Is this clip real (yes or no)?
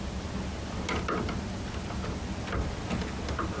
yes